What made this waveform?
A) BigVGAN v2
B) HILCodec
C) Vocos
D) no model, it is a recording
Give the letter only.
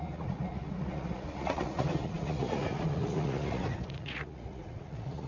C